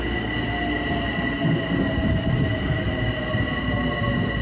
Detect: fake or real real